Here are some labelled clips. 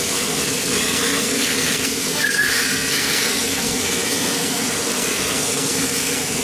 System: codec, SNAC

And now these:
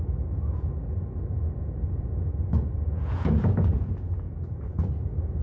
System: vocoder, Vocos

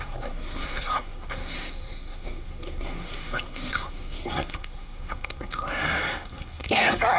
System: codec, SNAC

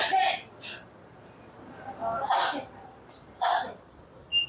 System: vocoder, BigVGAN v2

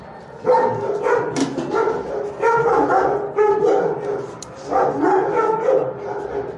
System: none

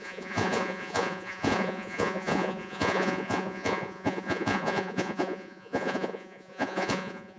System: vocoder, Vocos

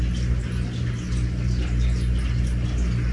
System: none